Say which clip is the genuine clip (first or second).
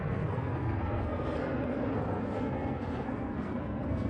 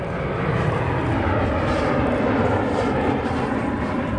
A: second